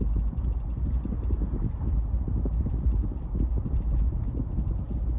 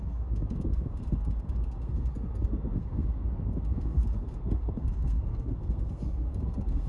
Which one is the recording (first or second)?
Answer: first